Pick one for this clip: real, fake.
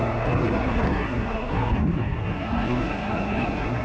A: fake